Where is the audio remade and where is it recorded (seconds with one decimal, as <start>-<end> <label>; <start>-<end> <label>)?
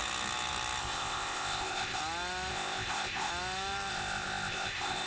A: 0.0-0.8 recorded; 0.8-2.0 remade; 2.0-2.5 recorded; 2.5-3.3 remade; 3.3-3.9 recorded; 3.9-5.1 remade